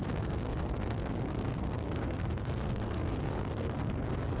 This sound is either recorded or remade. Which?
remade